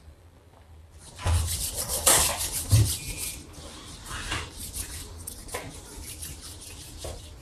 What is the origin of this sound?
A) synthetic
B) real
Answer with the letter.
A